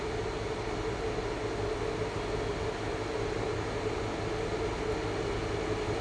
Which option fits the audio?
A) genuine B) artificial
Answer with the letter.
A